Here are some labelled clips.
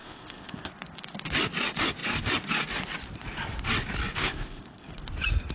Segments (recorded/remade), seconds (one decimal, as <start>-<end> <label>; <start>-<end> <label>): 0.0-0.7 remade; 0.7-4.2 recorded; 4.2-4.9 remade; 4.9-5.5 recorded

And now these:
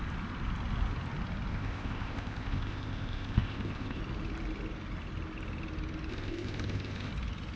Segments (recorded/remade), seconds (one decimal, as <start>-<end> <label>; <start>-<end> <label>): 0.0-1.5 recorded; 1.5-4.0 remade; 4.0-6.1 recorded; 6.1-7.1 remade; 7.1-7.6 recorded

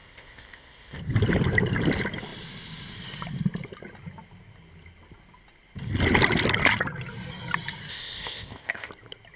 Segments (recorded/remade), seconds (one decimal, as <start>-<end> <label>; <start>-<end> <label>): 0.0-1.0 remade; 1.0-7.9 recorded; 7.9-8.9 remade; 8.9-9.4 recorded

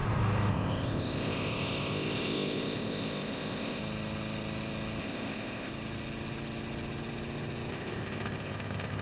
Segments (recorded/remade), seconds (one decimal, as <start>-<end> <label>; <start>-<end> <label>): 0.0-0.5 recorded; 0.5-3.8 remade; 3.8-5.0 recorded; 5.0-5.7 remade; 5.7-7.7 recorded; 7.7-9.0 remade

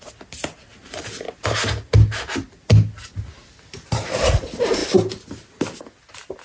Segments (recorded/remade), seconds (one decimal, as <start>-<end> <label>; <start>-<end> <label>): 0.0-6.4 recorded

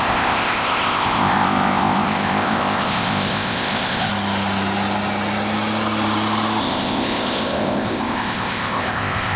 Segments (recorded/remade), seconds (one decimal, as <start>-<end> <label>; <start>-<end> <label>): 0.0-4.1 remade; 4.1-6.6 recorded; 6.6-9.4 remade